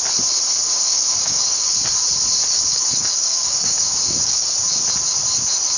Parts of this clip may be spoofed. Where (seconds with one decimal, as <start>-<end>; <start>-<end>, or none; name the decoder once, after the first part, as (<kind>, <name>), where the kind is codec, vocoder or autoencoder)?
0.6-1.7 (codec, DAC); 2.7-4.5